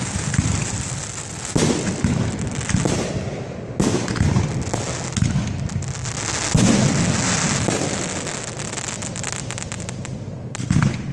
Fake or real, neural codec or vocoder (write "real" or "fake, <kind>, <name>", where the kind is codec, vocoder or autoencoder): real